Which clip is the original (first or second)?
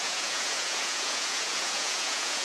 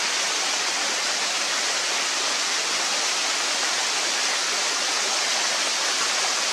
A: second